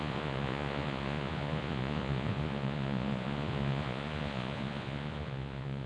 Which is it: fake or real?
fake